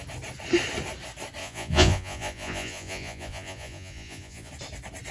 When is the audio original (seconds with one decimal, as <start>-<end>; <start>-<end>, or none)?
0.0-1.4; 4.5-5.1